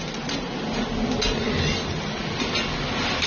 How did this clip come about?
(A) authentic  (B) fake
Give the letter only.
A